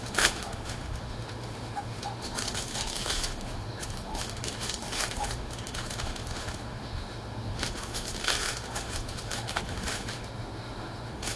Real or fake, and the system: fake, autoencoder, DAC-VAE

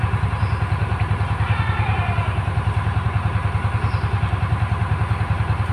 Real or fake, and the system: real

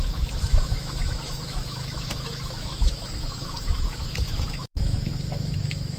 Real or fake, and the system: fake, autoencoder, DAC-VAE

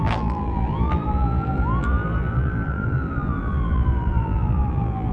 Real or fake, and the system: fake, vocoder, BigVGAN v2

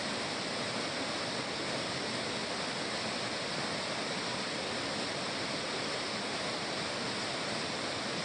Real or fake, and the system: real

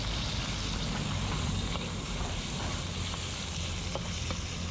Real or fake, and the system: real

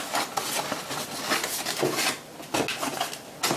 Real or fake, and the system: real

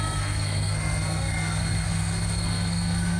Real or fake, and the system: fake, codec, SNAC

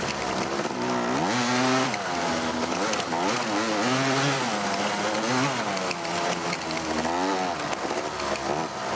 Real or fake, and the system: real